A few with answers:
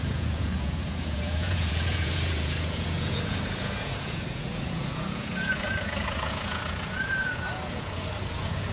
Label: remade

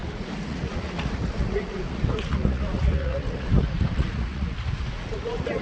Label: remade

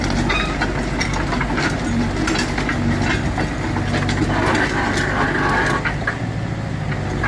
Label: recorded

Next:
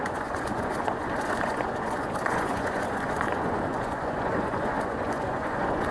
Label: remade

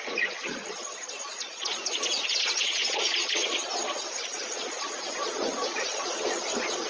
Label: remade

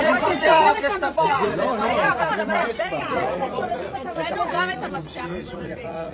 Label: remade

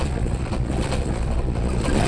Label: remade